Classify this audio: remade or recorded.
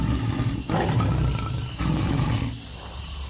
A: recorded